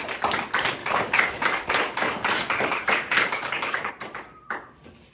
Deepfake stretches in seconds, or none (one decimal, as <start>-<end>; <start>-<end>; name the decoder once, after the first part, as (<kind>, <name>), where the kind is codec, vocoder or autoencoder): 0.8-3.9 (codec, DAC)